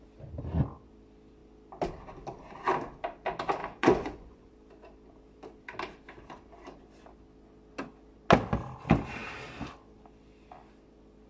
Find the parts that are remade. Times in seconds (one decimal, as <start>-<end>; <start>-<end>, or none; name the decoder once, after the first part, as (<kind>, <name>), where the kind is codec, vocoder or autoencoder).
3.6-4.5 (vocoder, Vocos)